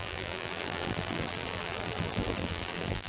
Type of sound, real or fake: fake